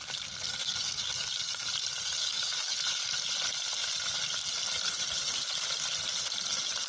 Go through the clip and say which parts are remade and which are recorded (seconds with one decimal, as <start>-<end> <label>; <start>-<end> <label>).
0.0-0.6 recorded; 0.6-1.3 remade; 1.3-2.2 recorded; 2.2-3.0 remade; 3.0-6.9 recorded